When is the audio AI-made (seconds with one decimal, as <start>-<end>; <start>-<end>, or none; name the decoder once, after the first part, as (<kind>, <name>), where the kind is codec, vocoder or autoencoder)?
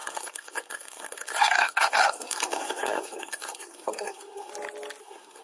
0.0-4.5 (codec, SNAC); 5.0-5.4